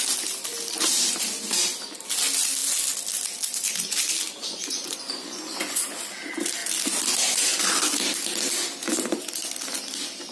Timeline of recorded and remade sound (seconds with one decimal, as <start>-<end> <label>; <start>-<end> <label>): 0.0-4.4 recorded; 4.4-5.8 remade; 5.8-10.3 recorded

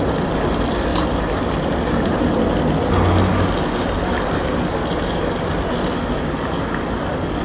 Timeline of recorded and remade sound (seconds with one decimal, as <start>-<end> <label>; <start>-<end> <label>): 0.0-0.9 recorded; 0.9-4.6 remade; 4.6-7.4 recorded

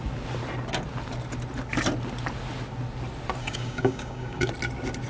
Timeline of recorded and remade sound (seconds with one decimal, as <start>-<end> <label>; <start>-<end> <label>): 0.0-3.4 recorded; 3.4-4.5 remade; 4.5-5.1 recorded

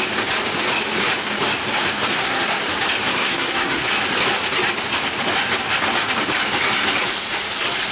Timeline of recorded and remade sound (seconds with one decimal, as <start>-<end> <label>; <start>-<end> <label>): 0.0-2.1 recorded; 2.1-2.6 remade; 2.6-3.1 recorded; 3.1-3.9 remade; 3.9-7.9 recorded

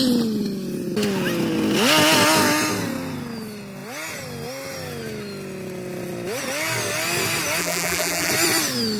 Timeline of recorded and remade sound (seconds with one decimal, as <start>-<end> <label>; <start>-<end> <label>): 0.0-7.6 recorded; 7.6-8.3 remade; 8.3-9.0 recorded

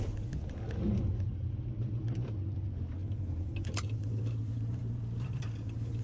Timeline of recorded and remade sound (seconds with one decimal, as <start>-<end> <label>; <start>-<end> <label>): 0.0-3.0 recorded; 3.0-4.2 remade; 4.2-6.0 recorded

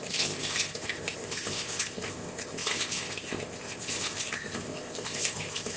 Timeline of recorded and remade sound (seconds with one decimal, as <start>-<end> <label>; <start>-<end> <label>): 0.0-5.8 remade

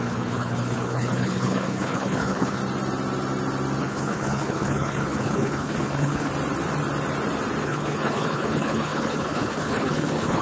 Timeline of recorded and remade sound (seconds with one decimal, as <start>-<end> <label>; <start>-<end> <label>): 0.0-2.6 remade; 2.6-3.8 recorded; 3.8-6.3 remade; 6.3-7.6 recorded; 7.6-10.4 remade